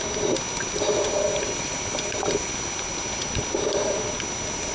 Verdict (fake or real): real